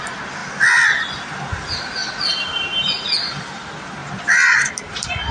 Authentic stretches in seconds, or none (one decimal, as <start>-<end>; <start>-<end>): 0.0-2.0; 2.7-4.0; 4.7-5.3